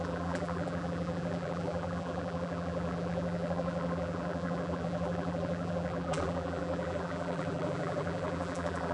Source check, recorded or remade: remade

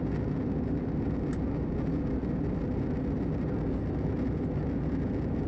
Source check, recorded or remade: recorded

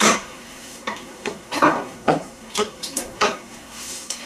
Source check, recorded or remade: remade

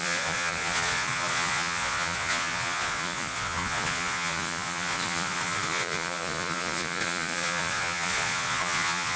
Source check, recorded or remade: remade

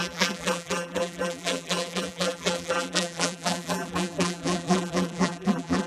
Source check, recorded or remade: remade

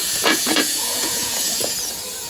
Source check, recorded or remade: remade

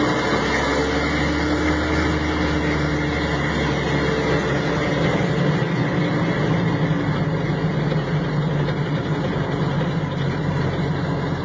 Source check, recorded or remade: recorded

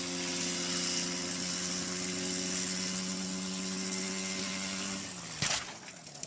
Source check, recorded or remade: recorded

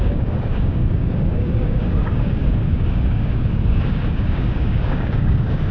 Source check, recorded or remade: remade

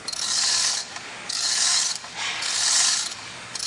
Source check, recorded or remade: remade